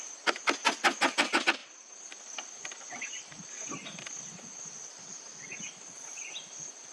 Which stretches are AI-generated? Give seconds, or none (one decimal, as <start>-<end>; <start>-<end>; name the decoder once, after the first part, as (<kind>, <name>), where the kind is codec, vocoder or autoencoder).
1.6-4.1 (vocoder, BigVGAN v2)